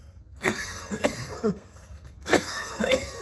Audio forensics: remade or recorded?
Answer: remade